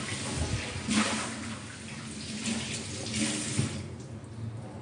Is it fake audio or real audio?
real